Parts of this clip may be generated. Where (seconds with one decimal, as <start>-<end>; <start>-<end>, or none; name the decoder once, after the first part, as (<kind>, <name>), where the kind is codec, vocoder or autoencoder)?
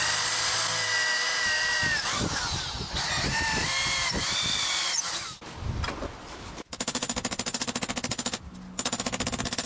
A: none